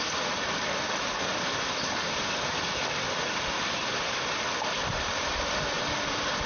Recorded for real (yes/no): no